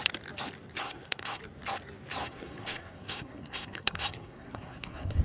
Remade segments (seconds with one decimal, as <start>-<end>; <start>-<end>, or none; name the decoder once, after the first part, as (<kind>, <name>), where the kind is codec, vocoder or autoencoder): 0.8-1.4 (codec, SNAC); 2.2-5.2